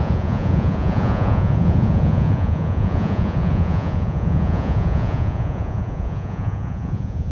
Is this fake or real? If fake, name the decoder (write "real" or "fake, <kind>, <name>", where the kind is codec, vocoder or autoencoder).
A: fake, vocoder, Vocos